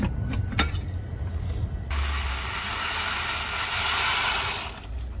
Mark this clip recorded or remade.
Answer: recorded